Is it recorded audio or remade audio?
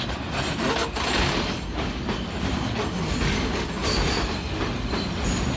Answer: recorded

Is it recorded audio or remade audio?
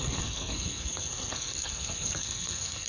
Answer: remade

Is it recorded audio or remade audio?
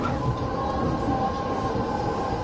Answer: recorded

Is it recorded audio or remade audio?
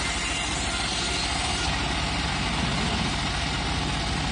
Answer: recorded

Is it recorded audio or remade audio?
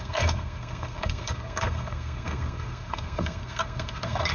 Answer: remade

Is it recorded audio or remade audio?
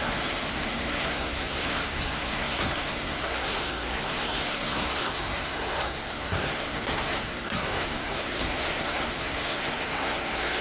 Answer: remade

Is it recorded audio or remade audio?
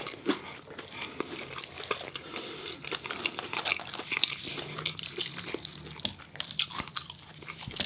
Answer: recorded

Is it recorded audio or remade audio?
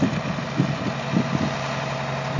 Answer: recorded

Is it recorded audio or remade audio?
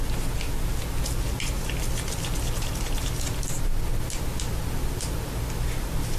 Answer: recorded